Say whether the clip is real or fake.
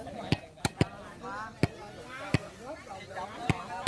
real